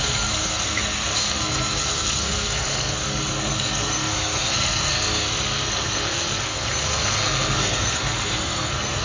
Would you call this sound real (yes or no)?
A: no